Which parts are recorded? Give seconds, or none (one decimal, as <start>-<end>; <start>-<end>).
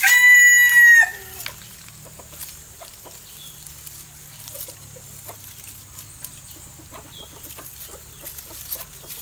0.0-9.2